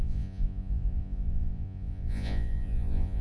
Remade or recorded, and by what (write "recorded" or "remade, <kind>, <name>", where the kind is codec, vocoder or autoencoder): remade, vocoder, Vocos